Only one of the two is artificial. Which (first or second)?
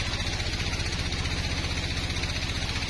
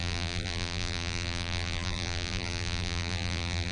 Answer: second